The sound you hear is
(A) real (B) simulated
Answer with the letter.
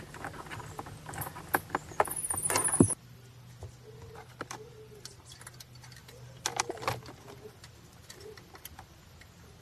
A